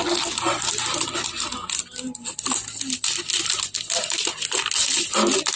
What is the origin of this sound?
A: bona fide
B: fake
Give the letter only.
A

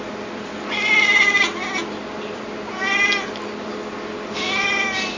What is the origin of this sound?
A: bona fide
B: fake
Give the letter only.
A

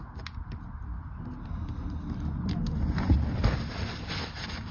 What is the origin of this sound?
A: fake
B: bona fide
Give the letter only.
B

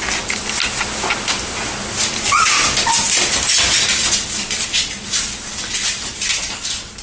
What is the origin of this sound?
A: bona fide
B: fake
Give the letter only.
A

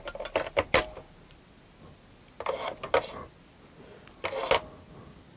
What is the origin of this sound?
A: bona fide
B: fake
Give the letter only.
A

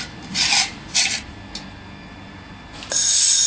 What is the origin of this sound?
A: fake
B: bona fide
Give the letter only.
B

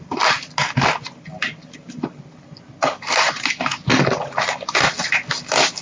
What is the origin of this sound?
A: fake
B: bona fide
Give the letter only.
B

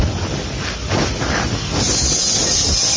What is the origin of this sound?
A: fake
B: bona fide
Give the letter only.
B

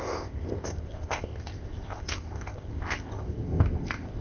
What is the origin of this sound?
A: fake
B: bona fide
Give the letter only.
A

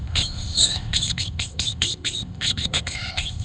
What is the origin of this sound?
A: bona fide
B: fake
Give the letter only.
B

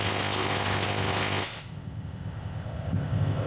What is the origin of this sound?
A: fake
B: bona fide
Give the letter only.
A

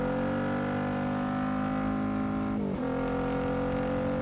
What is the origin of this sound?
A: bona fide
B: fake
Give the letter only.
A